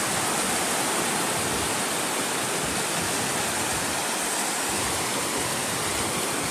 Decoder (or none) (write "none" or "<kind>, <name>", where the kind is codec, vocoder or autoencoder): none